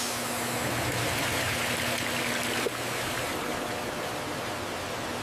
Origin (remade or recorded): recorded